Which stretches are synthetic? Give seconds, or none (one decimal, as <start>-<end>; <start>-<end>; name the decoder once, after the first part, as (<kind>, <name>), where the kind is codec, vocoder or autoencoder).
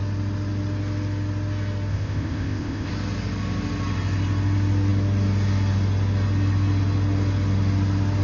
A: 1.9-2.9 (codec, ZipCodec)